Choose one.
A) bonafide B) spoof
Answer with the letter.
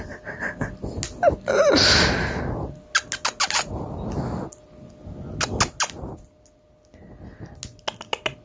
A